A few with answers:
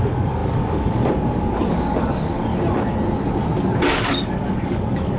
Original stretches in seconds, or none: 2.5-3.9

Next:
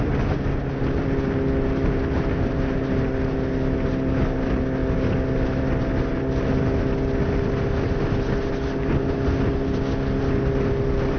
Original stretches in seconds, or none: 0.0-11.2

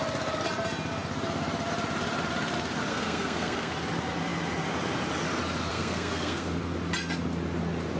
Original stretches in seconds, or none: 0.0-2.9; 3.7-5.7; 6.6-8.0

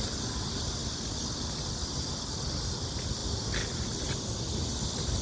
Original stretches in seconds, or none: 0.0-5.2